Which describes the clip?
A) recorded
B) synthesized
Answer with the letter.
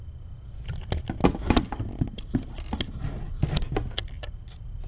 A